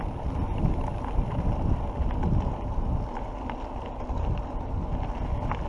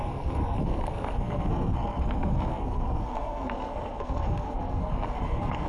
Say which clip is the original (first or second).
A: first